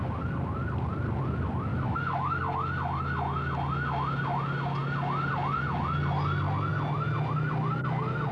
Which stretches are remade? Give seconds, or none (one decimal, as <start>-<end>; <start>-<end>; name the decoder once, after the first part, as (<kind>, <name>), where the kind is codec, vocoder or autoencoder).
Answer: 1.7-2.4 (autoencoder, DAC-VAE)